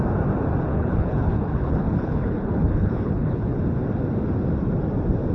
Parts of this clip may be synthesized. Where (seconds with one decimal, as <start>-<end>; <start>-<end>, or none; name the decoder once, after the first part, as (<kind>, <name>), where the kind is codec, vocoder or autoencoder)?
0.7-3.6 (codec, HILCodec)

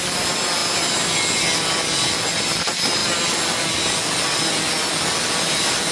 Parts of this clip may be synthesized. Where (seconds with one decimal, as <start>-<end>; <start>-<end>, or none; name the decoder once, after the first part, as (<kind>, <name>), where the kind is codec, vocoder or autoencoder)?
none

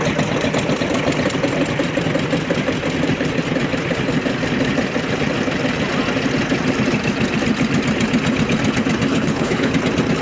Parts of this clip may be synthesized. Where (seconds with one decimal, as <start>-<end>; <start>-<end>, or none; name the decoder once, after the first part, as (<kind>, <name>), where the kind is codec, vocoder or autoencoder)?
9.1-9.7 (codec, HILCodec)

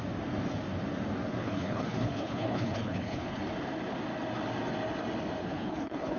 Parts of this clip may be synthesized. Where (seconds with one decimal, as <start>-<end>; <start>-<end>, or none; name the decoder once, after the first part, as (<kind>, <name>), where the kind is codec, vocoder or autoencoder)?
1.4-3.4 (codec, HILCodec); 5.4-6.2

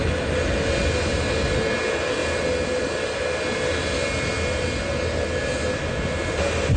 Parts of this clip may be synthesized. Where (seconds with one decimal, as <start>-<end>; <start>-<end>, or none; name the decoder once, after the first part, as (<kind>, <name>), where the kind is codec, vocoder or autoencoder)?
none

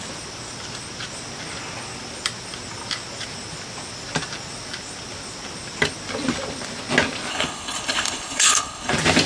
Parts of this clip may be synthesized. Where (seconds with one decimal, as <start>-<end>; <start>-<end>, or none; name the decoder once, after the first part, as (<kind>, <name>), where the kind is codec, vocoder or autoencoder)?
7.3-8.9 (codec, HILCodec)